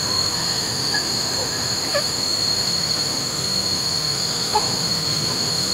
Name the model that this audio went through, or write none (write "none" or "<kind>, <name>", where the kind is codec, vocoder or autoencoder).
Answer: autoencoder, DAC-VAE